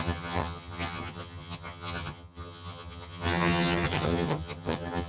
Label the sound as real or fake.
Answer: fake